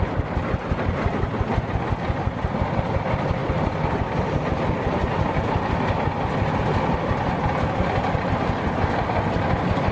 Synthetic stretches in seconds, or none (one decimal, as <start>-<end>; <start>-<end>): none